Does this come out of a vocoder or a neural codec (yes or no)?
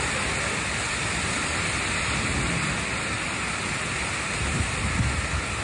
no